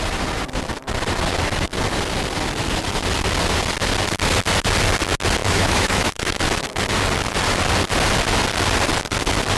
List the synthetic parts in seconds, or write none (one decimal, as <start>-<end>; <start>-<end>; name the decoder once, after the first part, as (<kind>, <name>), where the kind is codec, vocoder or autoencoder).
5.4-6.4 (autoencoder, DAC-VAE)